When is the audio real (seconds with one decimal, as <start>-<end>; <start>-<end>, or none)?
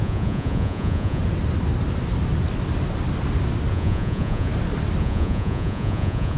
1.2-3.7; 4.5-5.0